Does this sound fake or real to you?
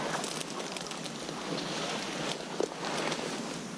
real